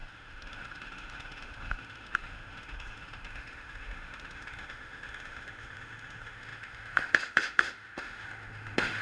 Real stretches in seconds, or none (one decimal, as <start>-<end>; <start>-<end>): none